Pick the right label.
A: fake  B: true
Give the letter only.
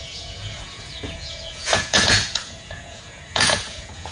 A